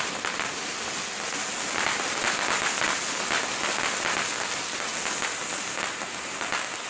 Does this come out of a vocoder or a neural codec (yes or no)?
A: no